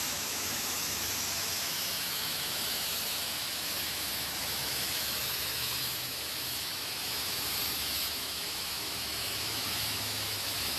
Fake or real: fake